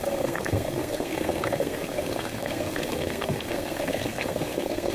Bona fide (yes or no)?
no